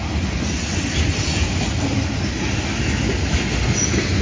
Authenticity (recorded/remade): recorded